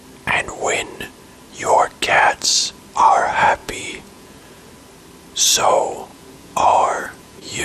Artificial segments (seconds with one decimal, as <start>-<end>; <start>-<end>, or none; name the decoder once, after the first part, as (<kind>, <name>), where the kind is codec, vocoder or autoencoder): 3.6-4.7 (vocoder, Vocos); 6.1-7.6